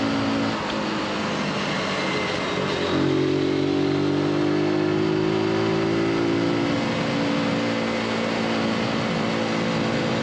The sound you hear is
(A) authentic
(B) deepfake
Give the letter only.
A